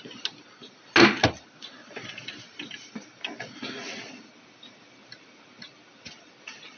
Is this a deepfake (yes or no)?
no